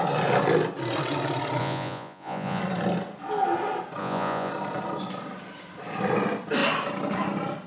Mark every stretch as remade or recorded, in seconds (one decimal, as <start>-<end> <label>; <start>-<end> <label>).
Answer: 0.0-1.6 recorded; 1.6-2.6 remade; 2.6-4.0 recorded; 4.0-4.5 remade; 4.5-7.7 recorded